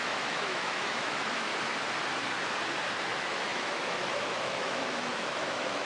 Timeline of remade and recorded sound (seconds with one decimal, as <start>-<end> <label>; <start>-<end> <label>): 0.0-1.5 remade; 1.5-3.0 recorded; 3.0-5.9 remade